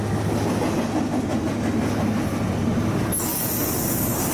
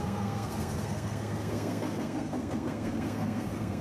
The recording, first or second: first